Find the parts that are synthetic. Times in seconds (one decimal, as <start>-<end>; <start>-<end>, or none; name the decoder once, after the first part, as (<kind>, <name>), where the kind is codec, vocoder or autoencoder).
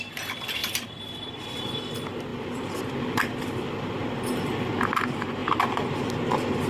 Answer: 0.6-1.3 (vocoder, BigVGAN v2); 2.3-4.7